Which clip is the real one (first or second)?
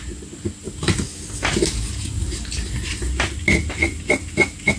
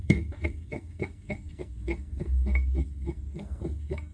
first